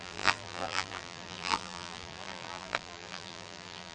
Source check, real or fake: fake